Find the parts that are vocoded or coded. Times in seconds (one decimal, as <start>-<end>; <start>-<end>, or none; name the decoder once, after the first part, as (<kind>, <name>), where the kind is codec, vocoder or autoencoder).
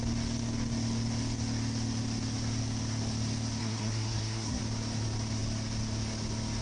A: 3.6-4.6 (codec, SNAC)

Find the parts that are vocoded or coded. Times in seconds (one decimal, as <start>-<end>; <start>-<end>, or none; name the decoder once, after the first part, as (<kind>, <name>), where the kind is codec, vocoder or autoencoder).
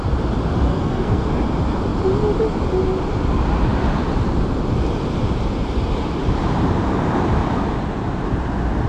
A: 0.7-1.3 (codec, SNAC)